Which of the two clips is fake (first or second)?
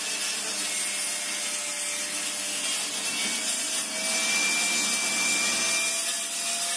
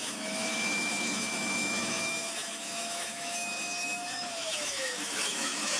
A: second